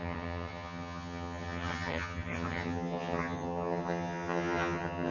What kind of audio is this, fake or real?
fake